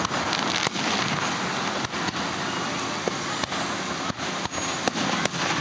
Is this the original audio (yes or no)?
yes